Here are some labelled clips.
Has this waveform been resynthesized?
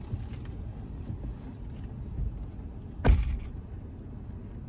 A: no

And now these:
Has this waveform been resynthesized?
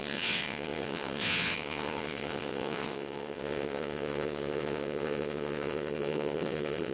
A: yes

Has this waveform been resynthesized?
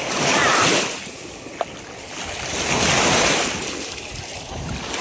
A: no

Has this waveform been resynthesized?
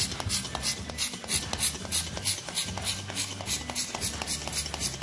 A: no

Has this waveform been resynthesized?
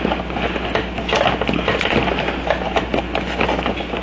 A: no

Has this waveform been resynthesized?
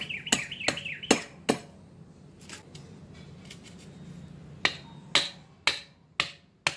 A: no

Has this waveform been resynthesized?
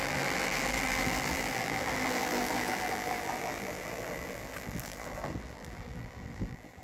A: yes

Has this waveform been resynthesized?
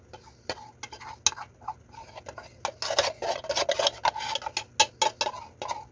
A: no